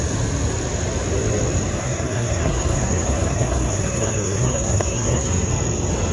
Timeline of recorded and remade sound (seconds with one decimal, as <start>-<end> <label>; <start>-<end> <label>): 0.0-1.8 recorded; 1.8-5.5 remade; 5.5-6.1 recorded